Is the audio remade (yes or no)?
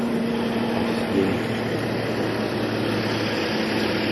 no